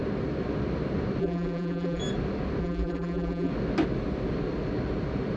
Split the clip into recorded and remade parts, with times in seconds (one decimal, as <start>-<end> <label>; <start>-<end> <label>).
0.0-1.2 recorded; 1.2-2.0 remade; 2.0-2.6 recorded; 2.6-3.5 remade; 3.5-5.4 recorded